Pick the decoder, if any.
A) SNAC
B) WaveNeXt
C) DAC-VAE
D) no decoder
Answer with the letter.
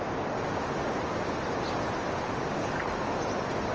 D